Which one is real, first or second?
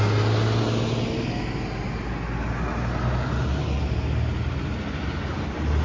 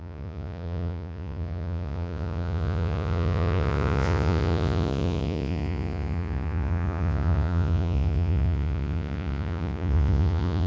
first